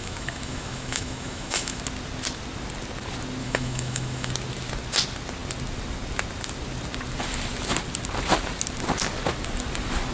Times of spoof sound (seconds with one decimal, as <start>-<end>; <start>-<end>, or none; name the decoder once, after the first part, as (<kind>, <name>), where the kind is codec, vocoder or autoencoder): 0.0-1.8 (autoencoder, DAC-VAE); 3.4-4.3